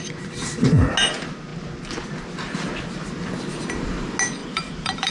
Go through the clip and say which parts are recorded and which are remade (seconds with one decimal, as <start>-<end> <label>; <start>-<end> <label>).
0.0-4.4 recorded; 4.4-5.1 remade